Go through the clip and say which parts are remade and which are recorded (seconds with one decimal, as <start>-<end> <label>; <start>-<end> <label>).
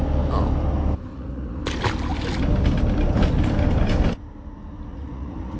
0.0-1.1 recorded; 1.1-1.6 remade; 1.6-4.9 recorded; 4.9-5.6 remade